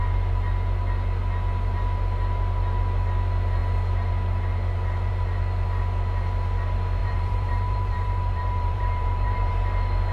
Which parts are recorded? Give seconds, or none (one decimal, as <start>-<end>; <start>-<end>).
0.0-7.0; 9.5-10.1